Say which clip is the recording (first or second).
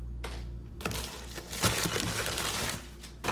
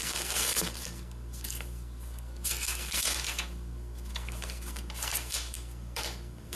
first